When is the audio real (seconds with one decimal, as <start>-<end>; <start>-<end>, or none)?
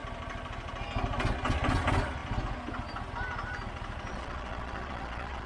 0.0-4.1